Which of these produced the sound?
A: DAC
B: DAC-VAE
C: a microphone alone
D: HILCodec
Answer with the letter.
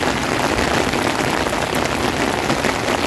C